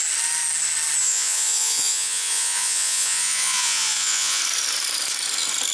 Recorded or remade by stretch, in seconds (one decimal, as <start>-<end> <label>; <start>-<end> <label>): 0.0-1.0 recorded; 1.0-4.4 remade; 4.4-5.7 recorded